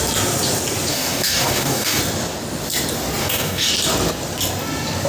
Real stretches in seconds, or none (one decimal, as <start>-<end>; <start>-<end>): 0.0-0.9; 2.0-3.2; 3.7-5.1